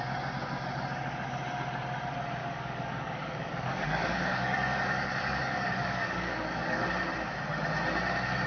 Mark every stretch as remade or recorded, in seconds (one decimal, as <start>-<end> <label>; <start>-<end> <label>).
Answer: 0.0-2.4 recorded; 2.4-6.9 remade; 6.9-8.5 recorded